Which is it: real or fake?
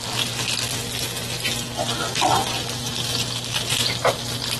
real